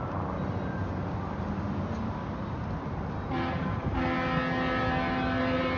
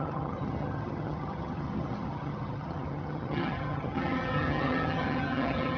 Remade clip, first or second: second